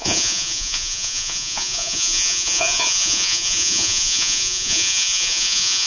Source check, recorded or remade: remade